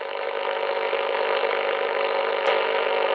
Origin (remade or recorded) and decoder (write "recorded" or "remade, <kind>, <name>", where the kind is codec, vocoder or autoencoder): recorded